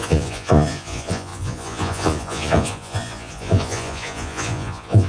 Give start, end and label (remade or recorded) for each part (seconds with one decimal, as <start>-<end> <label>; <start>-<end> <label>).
0.0-5.1 remade